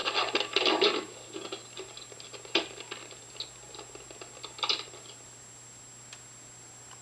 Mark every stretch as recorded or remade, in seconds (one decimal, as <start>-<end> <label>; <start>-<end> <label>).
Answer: 0.0-7.0 recorded

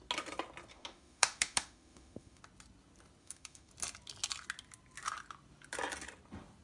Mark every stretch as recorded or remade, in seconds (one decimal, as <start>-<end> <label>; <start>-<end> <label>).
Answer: 0.0-0.7 recorded; 0.7-2.4 remade; 2.4-3.2 recorded; 3.2-3.7 remade; 3.7-6.6 recorded

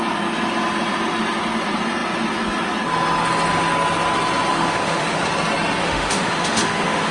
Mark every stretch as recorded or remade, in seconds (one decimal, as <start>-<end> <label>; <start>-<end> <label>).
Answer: 0.0-4.5 recorded; 4.5-5.2 remade; 5.2-5.8 recorded; 5.8-7.1 remade

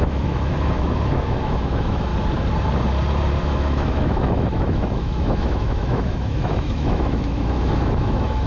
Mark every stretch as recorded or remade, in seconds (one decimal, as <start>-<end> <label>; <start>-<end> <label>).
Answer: 0.0-2.1 remade; 2.1-3.4 recorded; 3.4-8.5 remade

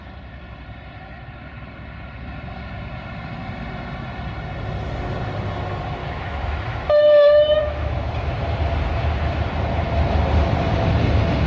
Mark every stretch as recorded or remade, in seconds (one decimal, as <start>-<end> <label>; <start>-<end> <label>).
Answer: 0.0-6.0 recorded; 6.0-8.1 remade; 8.1-11.5 recorded